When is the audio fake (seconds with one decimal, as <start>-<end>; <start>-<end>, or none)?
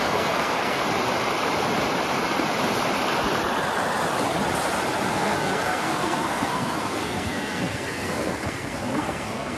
0.0-0.8; 5.1-9.6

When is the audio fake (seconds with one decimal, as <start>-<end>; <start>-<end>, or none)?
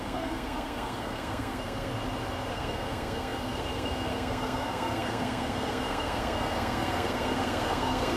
0.0-1.9; 2.5-8.2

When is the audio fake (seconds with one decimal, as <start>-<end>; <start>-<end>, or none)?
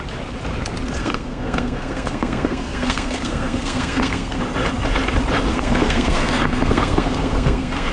1.0-4.4; 5.5-7.9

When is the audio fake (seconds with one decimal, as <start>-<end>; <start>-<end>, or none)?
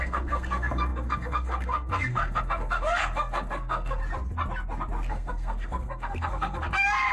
0.0-4.0; 5.1-7.1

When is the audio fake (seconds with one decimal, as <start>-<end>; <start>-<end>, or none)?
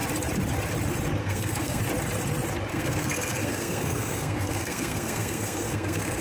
1.2-1.8; 2.7-6.2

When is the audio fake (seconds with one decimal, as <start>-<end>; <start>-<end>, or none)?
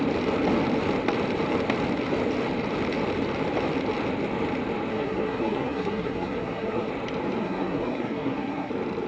4.9-6.9; 7.4-8.7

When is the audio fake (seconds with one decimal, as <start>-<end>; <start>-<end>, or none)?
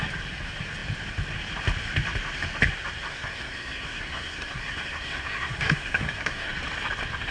3.1-6.5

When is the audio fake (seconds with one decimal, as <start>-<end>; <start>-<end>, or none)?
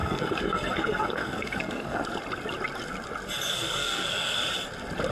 0.0-2.0; 3.5-4.4